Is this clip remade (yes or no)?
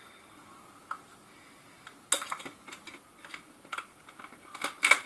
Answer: no